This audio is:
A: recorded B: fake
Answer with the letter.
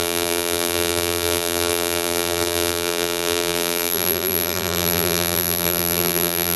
B